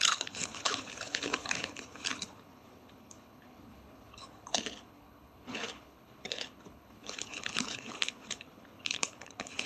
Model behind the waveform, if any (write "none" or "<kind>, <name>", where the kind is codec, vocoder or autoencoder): codec, HILCodec